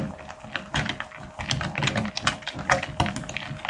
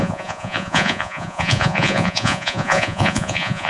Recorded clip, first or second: first